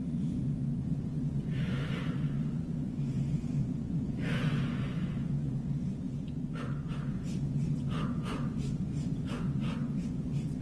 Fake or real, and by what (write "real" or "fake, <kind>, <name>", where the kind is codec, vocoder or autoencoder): fake, vocoder, Vocos